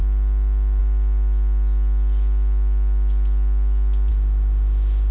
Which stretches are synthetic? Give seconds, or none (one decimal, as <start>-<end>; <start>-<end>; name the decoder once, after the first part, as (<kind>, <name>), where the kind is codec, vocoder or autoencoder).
4.1-5.1 (autoencoder, DAC-VAE)